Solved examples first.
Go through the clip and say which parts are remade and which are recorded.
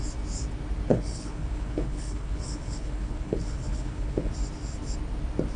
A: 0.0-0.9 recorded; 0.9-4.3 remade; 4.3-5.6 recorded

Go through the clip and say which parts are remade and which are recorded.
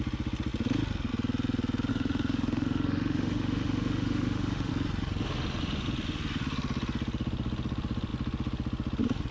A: 0.0-1.9 recorded; 1.9-4.7 remade; 4.7-9.3 recorded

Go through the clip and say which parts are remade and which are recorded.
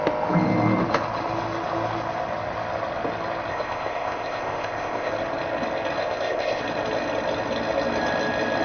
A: 0.0-3.5 recorded; 3.5-5.1 remade; 5.1-6.0 recorded; 6.0-6.6 remade; 6.6-8.6 recorded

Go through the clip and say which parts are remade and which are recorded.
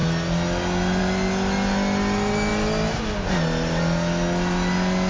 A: 0.0-5.1 recorded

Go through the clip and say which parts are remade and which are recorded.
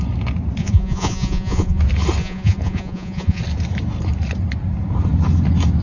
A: 0.0-0.6 recorded; 0.6-1.8 remade; 1.8-2.2 recorded; 2.2-3.4 remade; 3.4-5.8 recorded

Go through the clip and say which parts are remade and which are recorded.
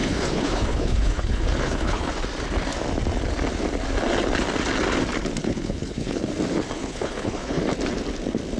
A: 0.0-2.1 remade; 2.1-5.4 recorded; 5.4-6.3 remade; 6.3-6.8 recorded; 6.8-7.6 remade; 7.6-8.6 recorded